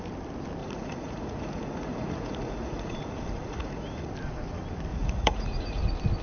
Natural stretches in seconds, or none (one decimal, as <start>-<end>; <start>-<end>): 0.0-0.6; 4.1-4.9; 5.8-6.2